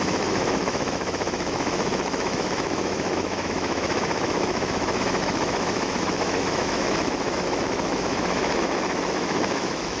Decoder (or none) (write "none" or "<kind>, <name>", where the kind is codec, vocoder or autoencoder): autoencoder, DAC-VAE